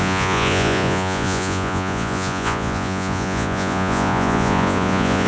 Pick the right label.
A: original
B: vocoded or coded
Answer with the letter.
B